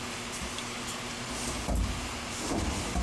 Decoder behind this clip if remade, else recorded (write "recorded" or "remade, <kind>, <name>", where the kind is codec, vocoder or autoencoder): recorded